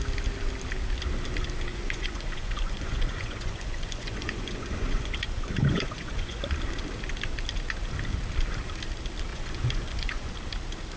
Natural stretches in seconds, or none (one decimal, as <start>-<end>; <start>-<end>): 0.0-1.7; 6.4-9.3; 10.3-11.0